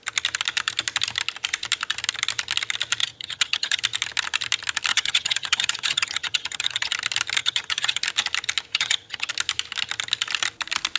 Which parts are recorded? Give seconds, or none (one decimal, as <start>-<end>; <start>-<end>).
0.0-3.0; 3.8-4.9; 6.9-7.4; 8.0-8.7; 9.3-11.0